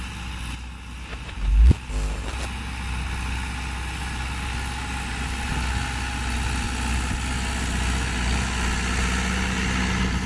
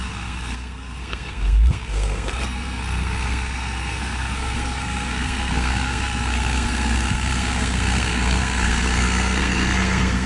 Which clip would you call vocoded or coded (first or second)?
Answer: second